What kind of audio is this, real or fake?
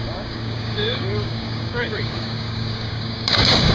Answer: fake